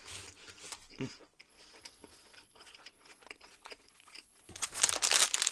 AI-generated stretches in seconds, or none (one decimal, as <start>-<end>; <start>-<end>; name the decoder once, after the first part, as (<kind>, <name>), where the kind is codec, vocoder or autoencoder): 1.5-4.8 (vocoder, Vocos)